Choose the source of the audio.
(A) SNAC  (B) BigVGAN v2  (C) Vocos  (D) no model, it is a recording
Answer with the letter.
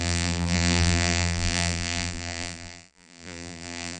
B